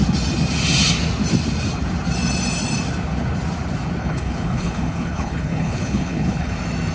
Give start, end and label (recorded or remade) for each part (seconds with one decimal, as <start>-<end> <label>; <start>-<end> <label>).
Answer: 0.0-4.0 recorded; 4.0-6.5 remade; 6.5-6.9 recorded